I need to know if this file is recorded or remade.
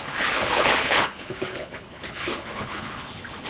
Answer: remade